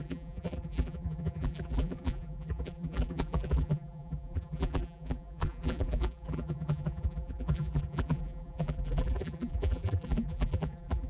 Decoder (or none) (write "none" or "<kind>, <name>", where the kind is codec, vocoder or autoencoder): vocoder, BigVGAN v2